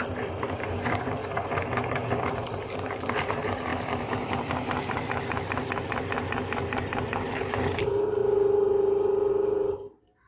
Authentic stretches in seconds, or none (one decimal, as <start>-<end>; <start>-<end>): 1.2-1.9